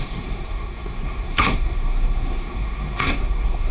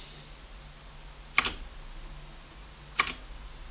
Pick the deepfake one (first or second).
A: first